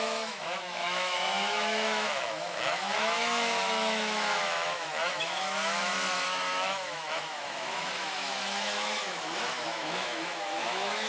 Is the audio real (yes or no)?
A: no